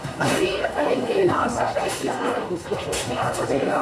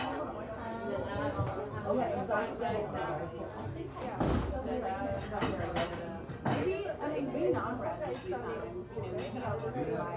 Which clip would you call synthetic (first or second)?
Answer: first